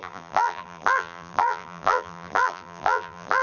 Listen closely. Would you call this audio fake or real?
fake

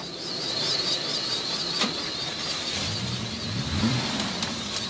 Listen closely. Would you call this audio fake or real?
fake